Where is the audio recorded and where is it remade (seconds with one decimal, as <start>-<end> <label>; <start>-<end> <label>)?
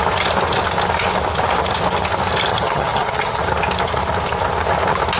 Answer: 0.0-2.5 recorded; 2.5-3.4 remade; 3.4-5.2 recorded